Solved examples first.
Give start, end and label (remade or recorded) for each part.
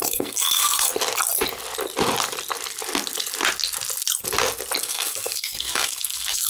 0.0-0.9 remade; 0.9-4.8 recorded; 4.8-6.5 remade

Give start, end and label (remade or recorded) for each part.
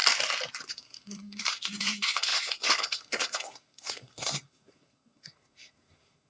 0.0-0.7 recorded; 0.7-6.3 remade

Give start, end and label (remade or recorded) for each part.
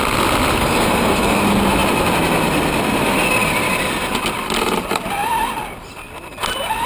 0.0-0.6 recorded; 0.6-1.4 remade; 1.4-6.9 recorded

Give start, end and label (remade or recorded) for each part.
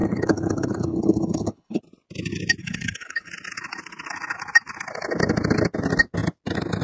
0.0-1.8 remade; 1.8-2.6 recorded; 2.6-3.3 remade; 3.3-6.8 recorded